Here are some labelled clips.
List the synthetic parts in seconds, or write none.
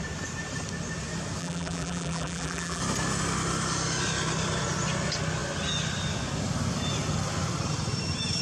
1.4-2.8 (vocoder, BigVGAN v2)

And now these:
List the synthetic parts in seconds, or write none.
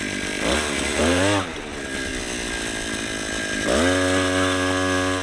0.9-1.6 (vocoder, BigVGAN v2)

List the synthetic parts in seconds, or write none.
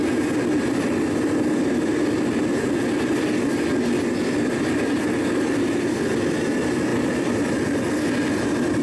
6.9-7.4 (vocoder, BigVGAN v2)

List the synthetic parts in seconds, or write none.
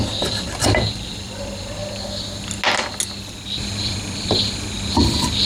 0.0-1.8 (vocoder, BigVGAN v2); 3.6-5.5